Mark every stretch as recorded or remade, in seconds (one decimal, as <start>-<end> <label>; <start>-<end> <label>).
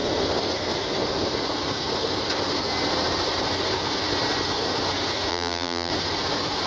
0.0-5.3 recorded; 5.3-5.9 remade; 5.9-6.7 recorded